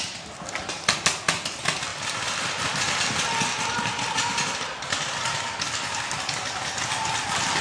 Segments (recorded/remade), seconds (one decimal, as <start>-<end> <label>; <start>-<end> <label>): 0.0-7.6 recorded